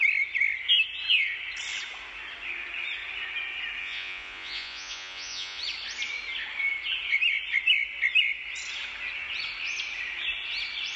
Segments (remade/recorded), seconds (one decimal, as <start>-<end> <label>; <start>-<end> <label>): 0.0-3.8 recorded; 3.8-5.6 remade; 5.6-11.0 recorded